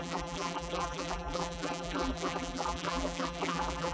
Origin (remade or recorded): remade